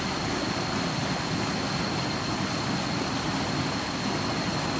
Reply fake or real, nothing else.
real